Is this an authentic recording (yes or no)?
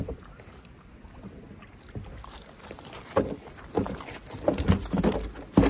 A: yes